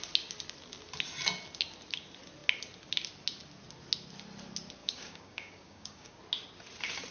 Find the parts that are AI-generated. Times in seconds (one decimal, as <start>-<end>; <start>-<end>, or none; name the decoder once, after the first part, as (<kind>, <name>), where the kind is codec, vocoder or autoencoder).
4.8-6.2 (codec, DAC)